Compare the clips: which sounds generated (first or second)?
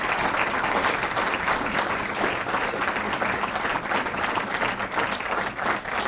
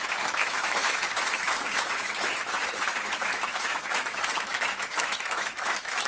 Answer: second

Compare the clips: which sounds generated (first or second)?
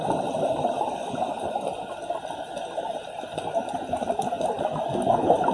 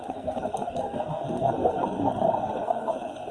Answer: second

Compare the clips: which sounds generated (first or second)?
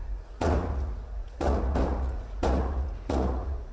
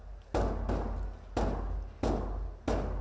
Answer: first